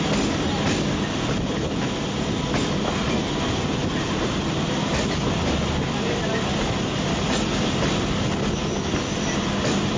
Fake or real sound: real